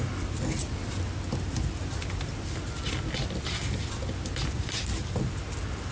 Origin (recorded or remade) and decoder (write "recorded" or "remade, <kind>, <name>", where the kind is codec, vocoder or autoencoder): recorded